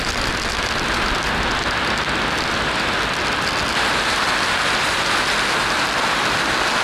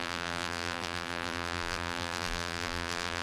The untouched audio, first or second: first